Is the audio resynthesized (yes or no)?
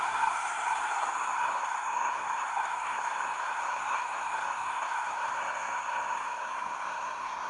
yes